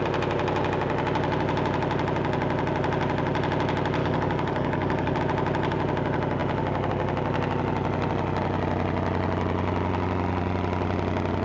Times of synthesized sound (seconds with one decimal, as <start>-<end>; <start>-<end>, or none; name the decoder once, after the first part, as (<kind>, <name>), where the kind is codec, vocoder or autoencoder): 4.0-5.2 (codec, DAC)